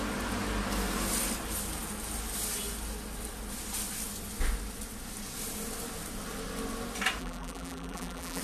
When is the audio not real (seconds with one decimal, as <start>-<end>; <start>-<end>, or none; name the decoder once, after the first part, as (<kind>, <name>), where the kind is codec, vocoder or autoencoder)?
7.2-8.4 (vocoder, BigVGAN v2)